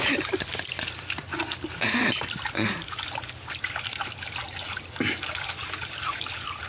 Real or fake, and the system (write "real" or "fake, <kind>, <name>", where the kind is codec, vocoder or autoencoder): real